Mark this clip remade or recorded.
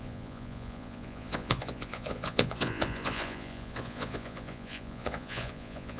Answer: remade